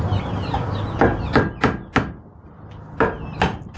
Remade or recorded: recorded